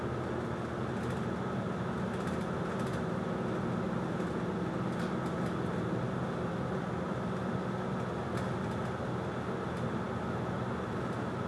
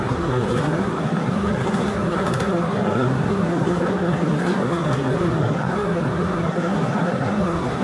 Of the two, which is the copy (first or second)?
second